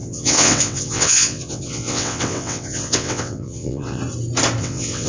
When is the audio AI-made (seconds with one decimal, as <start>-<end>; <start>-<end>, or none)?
0.0-4.0; 4.6-5.1